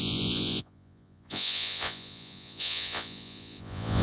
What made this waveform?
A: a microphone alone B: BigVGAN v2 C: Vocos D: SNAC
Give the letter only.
C